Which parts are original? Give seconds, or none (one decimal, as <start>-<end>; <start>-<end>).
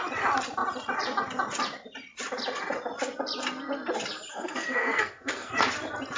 0.0-4.3; 5.5-6.2